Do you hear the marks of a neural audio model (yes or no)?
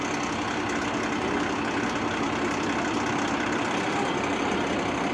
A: yes